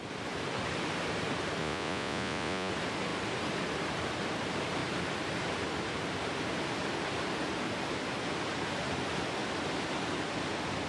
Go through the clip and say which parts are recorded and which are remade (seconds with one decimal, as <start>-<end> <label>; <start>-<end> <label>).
0.0-1.6 recorded; 1.6-2.7 remade; 2.7-10.9 recorded